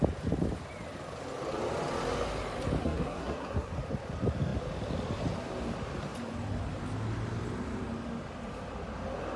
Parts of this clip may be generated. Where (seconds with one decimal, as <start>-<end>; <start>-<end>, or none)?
2.8-3.7

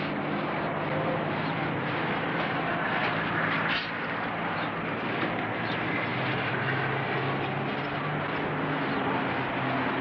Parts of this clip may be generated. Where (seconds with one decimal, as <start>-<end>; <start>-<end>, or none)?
none

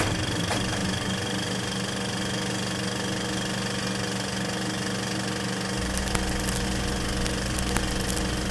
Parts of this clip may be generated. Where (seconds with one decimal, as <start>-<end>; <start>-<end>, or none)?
none

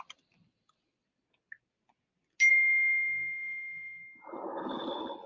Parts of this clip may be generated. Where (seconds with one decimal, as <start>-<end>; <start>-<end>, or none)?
2.5-4.0

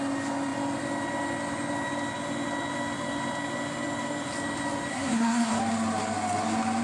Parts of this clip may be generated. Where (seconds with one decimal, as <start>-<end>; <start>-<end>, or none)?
4.9-5.6